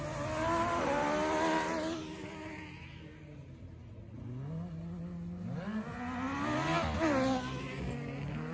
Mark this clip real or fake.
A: real